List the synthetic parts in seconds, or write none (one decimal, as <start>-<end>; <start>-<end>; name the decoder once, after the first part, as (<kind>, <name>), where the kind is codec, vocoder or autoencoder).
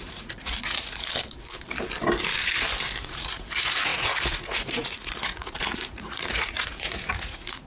0.0-1.1 (vocoder, Vocos); 3.0-7.7